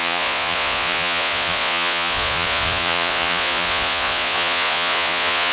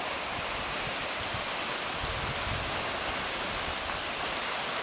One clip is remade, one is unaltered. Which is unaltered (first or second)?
second